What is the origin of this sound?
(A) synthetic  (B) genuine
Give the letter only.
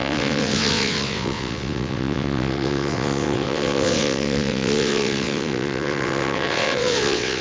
A